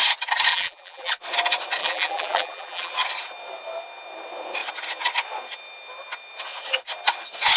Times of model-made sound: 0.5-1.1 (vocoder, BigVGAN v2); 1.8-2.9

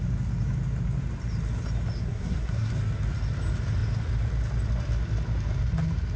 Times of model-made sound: 2.0-2.7 (codec, SNAC)

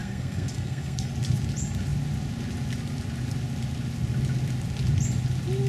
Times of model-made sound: 0.0-1.1 (codec, SNAC)